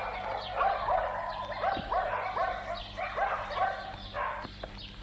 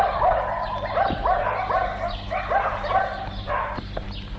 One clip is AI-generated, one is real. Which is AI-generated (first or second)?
second